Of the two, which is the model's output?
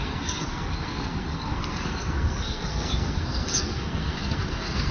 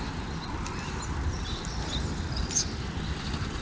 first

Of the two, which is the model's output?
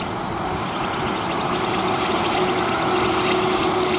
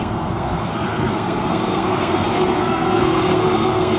second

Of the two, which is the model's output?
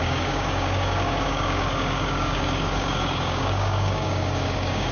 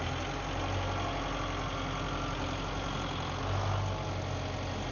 first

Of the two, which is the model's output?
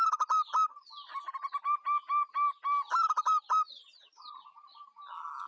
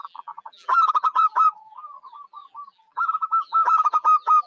second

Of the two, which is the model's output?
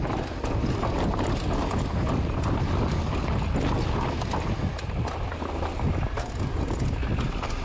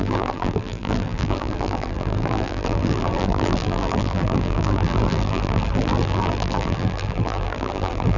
second